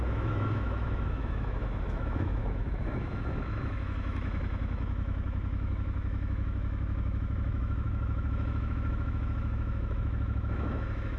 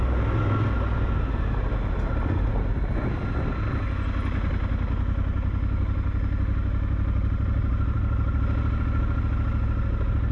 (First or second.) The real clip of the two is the second